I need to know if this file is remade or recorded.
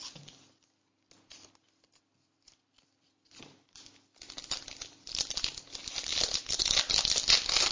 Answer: recorded